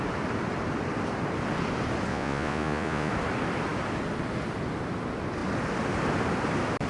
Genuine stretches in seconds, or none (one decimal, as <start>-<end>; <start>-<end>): 0.0-2.1; 3.1-6.9